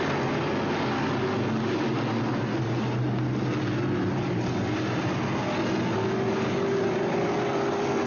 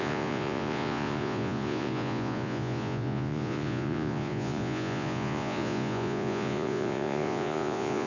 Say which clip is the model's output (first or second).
second